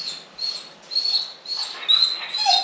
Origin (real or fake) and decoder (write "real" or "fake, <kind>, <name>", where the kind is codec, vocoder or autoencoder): real